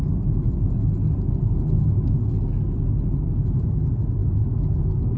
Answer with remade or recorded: recorded